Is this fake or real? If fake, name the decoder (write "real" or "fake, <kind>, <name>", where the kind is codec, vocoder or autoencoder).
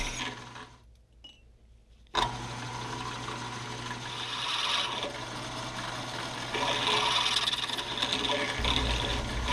real